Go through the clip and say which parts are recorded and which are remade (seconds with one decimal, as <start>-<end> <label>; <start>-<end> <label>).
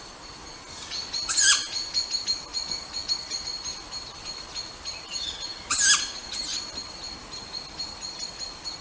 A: 0.0-8.8 recorded